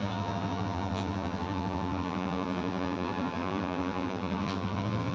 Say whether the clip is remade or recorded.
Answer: remade